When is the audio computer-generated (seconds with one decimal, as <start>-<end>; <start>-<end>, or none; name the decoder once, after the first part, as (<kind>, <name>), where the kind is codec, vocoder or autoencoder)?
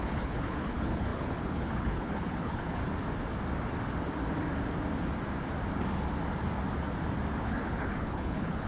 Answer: 0.0-2.8 (codec, HILCodec); 7.4-8.7